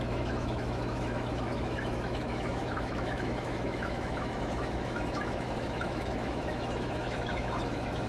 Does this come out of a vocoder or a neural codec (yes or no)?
yes